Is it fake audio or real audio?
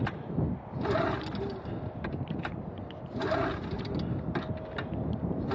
real